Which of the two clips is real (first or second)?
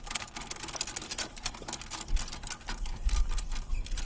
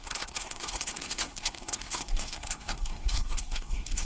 first